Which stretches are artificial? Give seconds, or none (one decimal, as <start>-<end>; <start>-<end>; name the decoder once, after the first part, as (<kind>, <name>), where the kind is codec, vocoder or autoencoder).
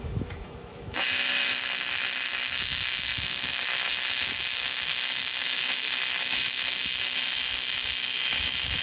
0.0-8.8 (autoencoder, DAC-VAE)